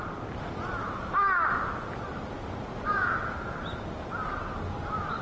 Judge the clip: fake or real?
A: real